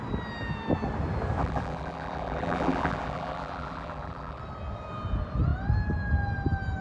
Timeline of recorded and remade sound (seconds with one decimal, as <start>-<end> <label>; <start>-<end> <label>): 0.0-1.4 recorded; 1.4-4.4 remade; 4.4-6.8 recorded